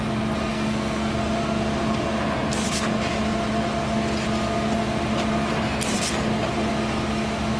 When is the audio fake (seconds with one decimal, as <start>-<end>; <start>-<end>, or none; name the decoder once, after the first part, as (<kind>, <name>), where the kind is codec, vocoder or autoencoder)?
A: 0.5-1.1 (codec, SNAC)